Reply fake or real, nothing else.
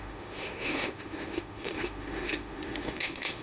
fake